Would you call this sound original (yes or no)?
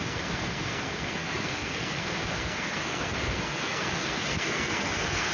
no